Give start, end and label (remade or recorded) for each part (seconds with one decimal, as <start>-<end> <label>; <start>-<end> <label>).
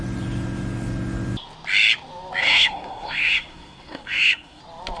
0.0-2.4 recorded; 2.4-4.6 remade; 4.6-5.0 recorded